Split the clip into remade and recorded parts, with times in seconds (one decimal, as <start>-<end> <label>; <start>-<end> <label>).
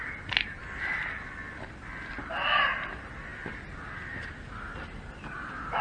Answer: 0.0-5.8 recorded